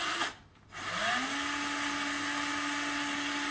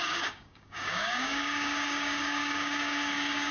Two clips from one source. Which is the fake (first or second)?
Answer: second